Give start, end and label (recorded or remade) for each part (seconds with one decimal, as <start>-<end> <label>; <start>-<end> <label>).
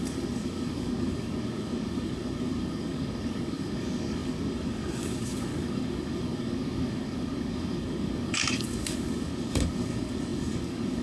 0.0-11.0 remade